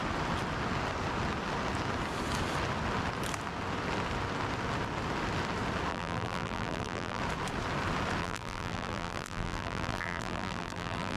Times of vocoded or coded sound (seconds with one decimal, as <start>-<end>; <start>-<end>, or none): 5.9-7.2; 8.2-11.2